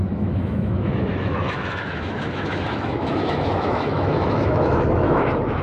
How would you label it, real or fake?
fake